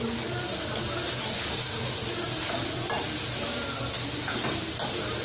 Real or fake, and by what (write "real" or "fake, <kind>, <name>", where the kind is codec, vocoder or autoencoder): real